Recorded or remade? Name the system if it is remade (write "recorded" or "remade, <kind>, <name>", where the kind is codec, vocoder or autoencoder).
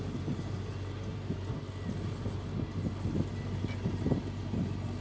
recorded